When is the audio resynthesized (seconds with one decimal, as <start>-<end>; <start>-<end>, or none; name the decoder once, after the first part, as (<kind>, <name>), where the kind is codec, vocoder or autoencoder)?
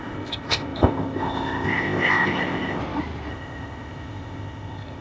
0.0-2.8 (codec, ZipCodec); 3.3-5.0